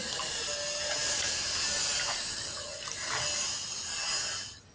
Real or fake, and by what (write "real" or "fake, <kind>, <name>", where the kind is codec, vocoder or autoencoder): real